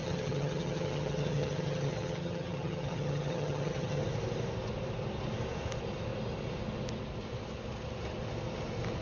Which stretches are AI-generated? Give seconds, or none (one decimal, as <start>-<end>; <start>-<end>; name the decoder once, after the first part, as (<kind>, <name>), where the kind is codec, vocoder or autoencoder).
0.0-4.0 (vocoder, HiFi-GAN)